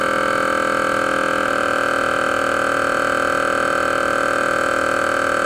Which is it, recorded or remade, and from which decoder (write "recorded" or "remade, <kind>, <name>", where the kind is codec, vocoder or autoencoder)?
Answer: recorded